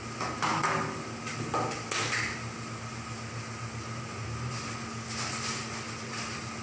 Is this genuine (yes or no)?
yes